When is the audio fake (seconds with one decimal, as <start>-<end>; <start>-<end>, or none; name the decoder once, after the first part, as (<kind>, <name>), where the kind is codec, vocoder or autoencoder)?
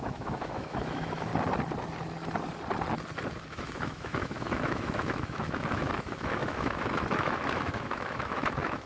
0.0-1.3 (autoencoder, DAC-VAE); 3.5-8.9